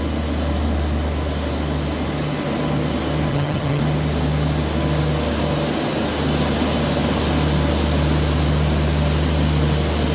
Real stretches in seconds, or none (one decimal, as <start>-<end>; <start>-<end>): 0.0-3.3; 3.8-10.1